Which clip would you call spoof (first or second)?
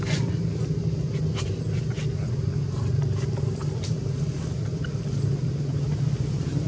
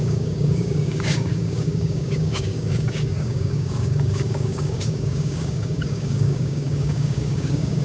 second